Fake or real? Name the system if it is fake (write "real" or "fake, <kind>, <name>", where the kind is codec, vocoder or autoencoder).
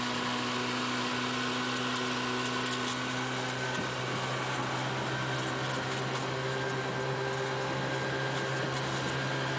real